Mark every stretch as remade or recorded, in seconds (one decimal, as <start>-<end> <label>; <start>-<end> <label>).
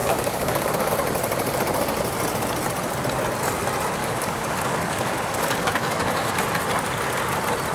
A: 0.0-0.9 remade; 0.9-4.0 recorded; 4.0-6.3 remade; 6.3-7.7 recorded